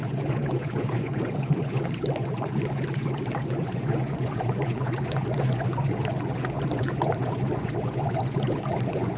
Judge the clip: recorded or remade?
remade